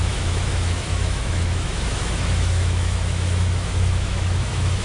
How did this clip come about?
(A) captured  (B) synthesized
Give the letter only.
B